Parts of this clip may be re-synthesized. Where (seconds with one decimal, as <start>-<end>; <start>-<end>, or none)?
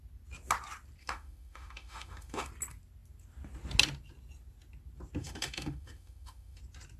1.0-2.5; 5.2-6.6